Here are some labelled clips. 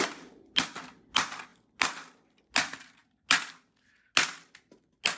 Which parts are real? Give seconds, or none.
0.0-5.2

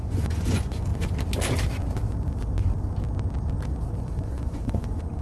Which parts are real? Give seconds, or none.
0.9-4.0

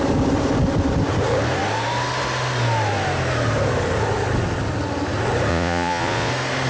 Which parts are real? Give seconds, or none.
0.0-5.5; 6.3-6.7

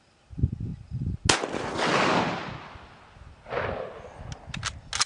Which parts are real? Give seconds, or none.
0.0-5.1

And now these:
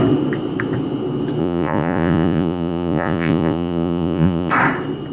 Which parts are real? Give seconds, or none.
0.0-1.4; 4.5-5.1